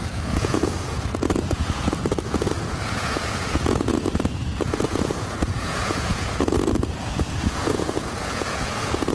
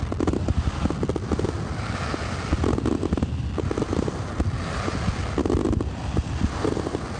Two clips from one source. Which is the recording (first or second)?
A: second